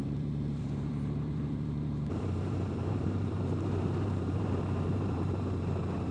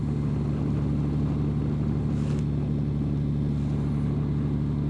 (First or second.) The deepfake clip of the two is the first